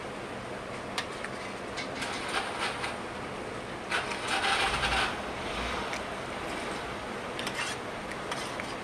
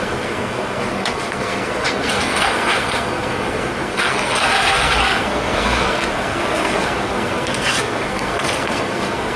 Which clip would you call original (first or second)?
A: first